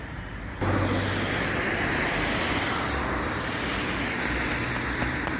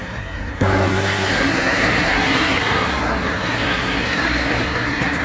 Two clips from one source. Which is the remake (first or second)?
second